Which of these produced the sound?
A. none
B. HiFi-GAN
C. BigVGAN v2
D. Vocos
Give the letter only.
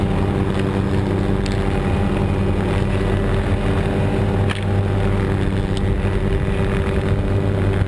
A